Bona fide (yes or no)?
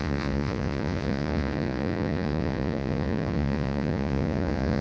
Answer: no